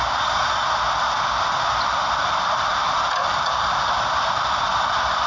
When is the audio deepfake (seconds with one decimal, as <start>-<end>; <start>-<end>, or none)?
0.0-5.3